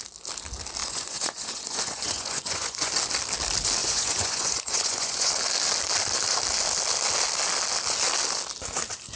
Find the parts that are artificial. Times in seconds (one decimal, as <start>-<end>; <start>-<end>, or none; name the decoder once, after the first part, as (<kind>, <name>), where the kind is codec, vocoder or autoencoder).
0.8-2.9 (vocoder, Vocos); 3.8-5.3